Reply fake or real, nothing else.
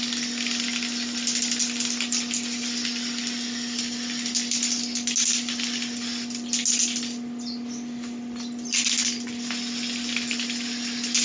real